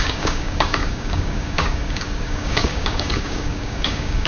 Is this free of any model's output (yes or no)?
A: no